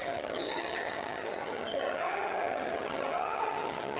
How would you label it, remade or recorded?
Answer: remade